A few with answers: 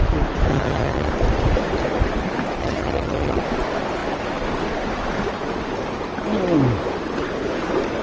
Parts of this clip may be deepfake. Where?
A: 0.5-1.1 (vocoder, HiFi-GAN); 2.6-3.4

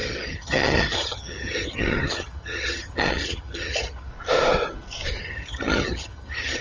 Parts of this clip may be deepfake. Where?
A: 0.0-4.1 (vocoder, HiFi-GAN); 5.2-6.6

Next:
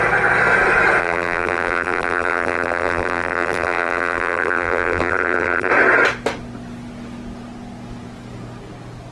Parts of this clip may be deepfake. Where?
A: 1.0-5.7 (vocoder, BigVGAN v2)

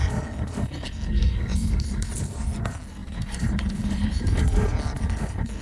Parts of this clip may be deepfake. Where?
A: 1.5-2.5 (vocoder, BigVGAN v2); 3.0-4.5